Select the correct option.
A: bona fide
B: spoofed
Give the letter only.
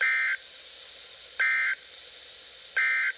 A